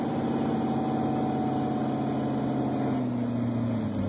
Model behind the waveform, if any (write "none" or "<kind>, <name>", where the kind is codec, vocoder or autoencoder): none